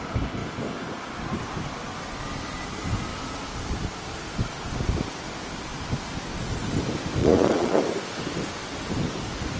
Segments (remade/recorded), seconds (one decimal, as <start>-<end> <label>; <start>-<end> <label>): 0.0-7.2 recorded; 7.2-7.8 remade; 7.8-9.6 recorded